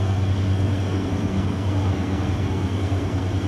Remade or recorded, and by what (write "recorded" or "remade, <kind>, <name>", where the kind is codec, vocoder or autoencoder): remade, codec, SNAC